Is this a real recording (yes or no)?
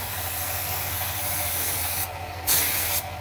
no